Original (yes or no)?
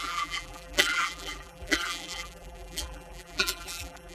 no